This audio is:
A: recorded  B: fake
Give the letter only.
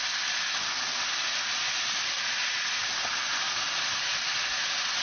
A